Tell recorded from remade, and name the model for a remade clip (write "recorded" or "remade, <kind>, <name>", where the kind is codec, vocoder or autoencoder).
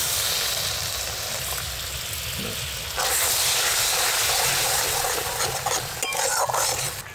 recorded